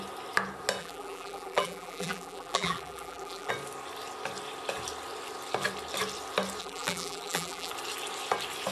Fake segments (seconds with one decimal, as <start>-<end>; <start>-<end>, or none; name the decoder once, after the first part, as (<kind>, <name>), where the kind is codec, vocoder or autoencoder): 0.8-3.5 (vocoder, BigVGAN v2); 6.6-7.7

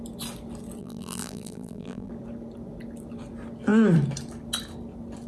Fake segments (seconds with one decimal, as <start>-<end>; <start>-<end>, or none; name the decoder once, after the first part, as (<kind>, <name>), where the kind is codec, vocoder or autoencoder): 0.8-2.1 (vocoder, BigVGAN v2)